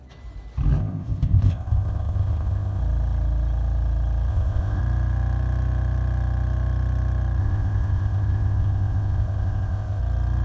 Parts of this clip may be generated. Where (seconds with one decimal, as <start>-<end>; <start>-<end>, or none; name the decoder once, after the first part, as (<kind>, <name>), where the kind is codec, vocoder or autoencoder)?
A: 0.8-2.8 (codec, ZipCodec); 4.3-4.8; 7.4-10.0